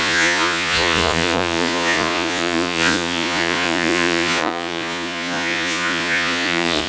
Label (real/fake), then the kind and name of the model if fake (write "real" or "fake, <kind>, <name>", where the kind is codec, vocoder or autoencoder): fake, vocoder, Vocos